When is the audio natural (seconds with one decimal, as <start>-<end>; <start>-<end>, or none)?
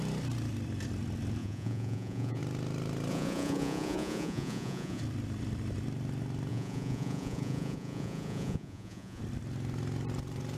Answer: 0.0-1.4; 2.4-3.1; 5.0-6.5; 9.2-10.6